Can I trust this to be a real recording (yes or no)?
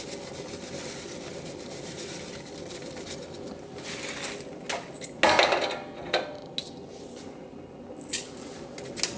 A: yes